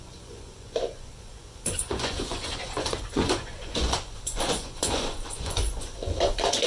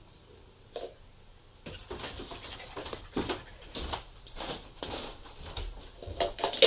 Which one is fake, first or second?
first